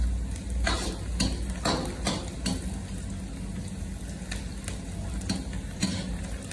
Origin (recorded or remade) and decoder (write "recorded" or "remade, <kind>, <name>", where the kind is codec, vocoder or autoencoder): recorded